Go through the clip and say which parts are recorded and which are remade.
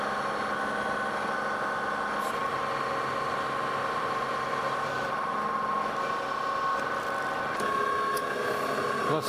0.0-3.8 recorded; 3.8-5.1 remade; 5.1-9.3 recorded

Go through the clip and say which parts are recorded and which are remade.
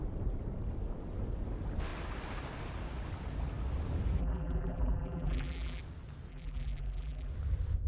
0.0-4.2 recorded; 4.2-5.8 remade; 5.8-6.3 recorded; 6.3-7.3 remade; 7.3-7.9 recorded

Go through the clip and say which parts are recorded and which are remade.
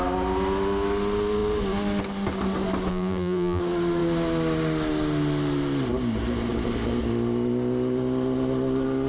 0.0-2.9 recorded; 2.9-3.6 remade; 3.6-9.1 recorded